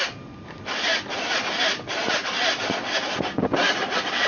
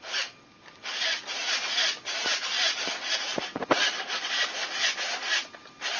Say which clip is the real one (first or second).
second